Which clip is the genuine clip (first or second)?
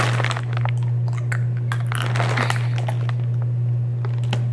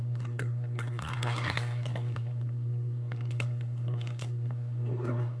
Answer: first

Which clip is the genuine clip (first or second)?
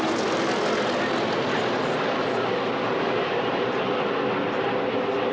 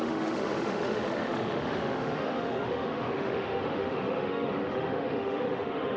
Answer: first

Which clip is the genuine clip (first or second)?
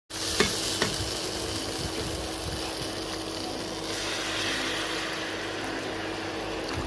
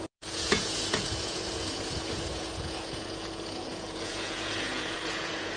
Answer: first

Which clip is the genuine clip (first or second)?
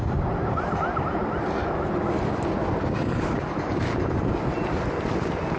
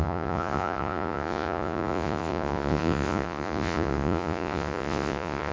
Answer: first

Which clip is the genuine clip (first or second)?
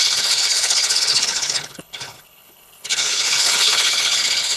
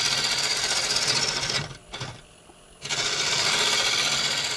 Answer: second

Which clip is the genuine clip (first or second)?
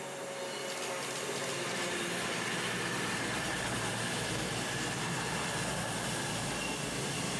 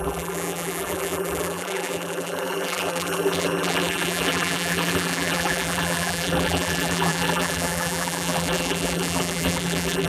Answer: first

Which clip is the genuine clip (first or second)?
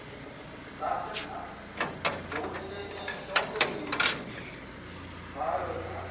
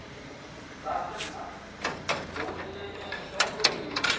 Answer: first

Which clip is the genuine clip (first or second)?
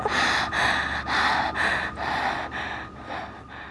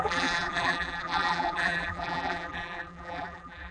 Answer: first